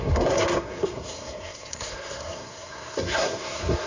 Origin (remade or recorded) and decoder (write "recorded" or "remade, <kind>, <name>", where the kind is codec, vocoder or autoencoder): remade, codec, SNAC